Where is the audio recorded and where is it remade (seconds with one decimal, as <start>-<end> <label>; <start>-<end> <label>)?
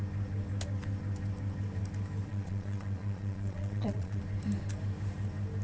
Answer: 0.0-2.3 recorded; 2.3-4.2 remade; 4.2-5.6 recorded